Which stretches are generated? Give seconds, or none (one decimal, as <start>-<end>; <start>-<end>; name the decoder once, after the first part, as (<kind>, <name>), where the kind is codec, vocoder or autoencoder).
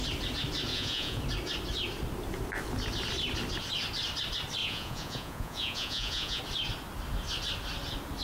0.7-1.2 (vocoder, Vocos); 4.6-6.4